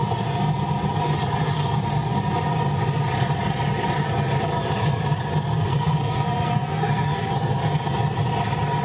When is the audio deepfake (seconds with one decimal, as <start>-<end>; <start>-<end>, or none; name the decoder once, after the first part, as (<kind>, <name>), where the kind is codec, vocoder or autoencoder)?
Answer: 5.7-7.3 (codec, SNAC)